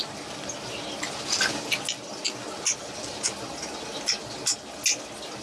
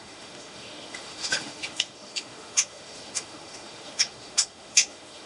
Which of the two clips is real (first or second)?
first